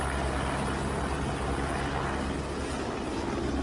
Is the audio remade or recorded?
recorded